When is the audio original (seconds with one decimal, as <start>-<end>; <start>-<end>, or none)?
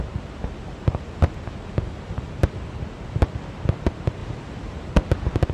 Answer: 0.0-4.2; 4.9-5.5